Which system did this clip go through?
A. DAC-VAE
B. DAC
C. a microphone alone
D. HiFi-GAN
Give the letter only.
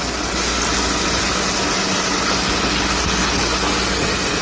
C